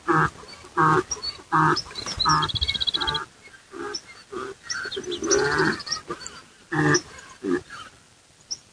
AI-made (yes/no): no